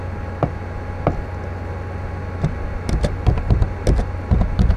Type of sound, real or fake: real